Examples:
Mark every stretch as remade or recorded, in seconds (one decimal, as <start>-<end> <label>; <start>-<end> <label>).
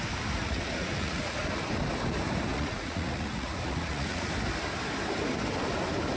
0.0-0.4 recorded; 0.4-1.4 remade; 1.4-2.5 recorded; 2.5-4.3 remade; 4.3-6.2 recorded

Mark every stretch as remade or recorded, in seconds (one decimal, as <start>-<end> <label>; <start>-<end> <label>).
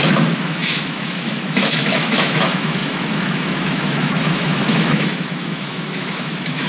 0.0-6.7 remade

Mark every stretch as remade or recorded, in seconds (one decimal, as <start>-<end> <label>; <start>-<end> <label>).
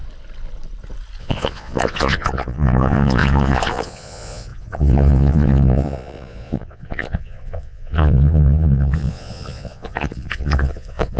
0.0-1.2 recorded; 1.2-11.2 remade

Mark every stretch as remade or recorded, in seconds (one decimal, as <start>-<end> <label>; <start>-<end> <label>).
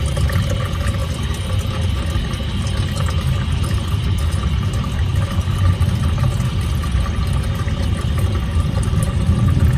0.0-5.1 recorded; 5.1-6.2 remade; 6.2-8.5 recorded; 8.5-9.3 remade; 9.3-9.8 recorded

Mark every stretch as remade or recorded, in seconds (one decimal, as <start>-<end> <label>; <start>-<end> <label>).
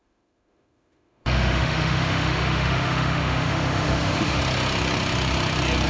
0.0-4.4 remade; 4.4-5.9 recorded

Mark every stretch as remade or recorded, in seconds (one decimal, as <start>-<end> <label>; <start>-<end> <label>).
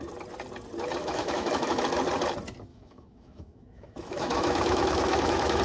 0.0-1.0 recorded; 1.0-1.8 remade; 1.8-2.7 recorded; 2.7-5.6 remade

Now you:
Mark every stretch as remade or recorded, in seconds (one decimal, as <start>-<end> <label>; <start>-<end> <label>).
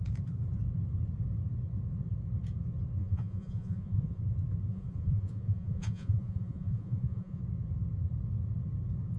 0.0-3.0 recorded; 3.0-4.2 remade; 4.2-4.7 recorded; 4.7-7.4 remade; 7.4-9.2 recorded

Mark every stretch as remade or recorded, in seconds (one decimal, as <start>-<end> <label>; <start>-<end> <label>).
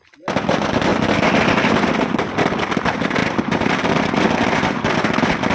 0.0-3.2 recorded; 3.2-4.2 remade; 4.2-5.5 recorded